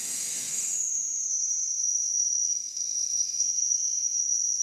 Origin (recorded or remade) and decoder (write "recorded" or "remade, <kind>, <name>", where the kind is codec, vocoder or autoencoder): remade, codec, SNAC